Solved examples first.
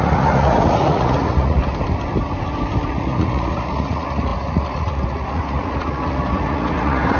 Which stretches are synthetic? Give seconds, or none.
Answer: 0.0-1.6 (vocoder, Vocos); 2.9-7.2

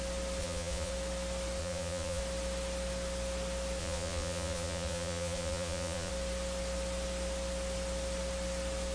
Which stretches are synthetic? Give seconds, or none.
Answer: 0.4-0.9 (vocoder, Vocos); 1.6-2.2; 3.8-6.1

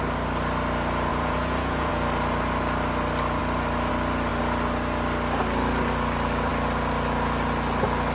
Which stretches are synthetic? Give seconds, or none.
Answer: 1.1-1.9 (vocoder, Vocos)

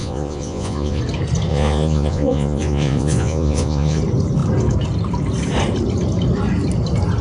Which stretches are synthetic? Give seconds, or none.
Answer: 0.0-1.0 (vocoder, Vocos); 1.5-4.0

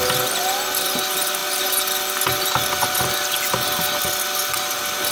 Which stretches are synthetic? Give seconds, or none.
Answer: none